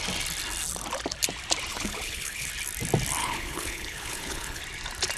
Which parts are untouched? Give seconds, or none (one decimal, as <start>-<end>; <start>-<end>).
0.0-1.7; 2.5-3.2; 4.6-5.2